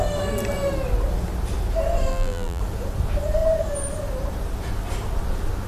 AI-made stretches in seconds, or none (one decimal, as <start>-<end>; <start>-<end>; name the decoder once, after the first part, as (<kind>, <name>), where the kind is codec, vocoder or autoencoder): 2.1-2.6 (vocoder, BigVGAN v2)